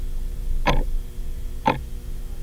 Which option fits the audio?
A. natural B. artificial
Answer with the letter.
A